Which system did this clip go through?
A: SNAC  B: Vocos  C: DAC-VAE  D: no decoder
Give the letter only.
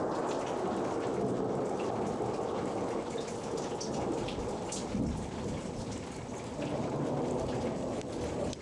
D